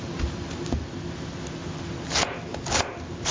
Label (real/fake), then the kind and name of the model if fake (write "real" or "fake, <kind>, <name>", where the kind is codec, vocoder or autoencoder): real